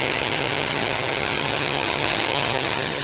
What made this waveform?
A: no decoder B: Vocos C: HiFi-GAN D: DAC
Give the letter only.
C